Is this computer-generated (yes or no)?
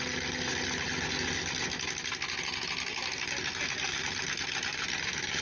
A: no